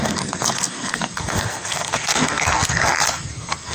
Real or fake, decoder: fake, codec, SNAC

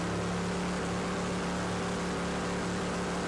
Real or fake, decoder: real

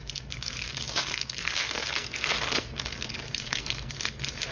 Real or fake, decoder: fake, codec, SNAC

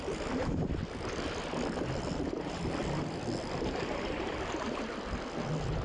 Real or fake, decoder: real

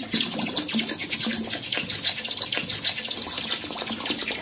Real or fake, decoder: real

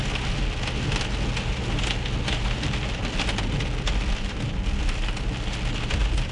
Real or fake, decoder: real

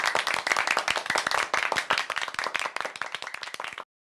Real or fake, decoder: real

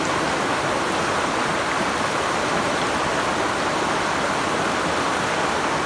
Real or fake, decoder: real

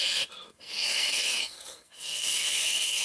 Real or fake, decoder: fake, codec, SNAC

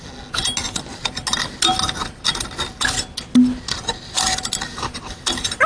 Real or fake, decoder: real